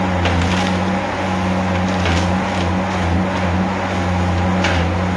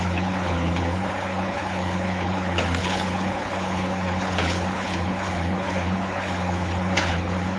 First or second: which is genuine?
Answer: first